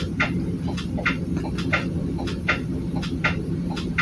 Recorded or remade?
recorded